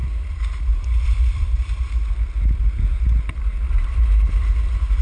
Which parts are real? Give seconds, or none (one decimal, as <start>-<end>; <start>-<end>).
2.1-5.0